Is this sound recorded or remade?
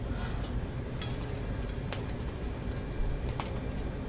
recorded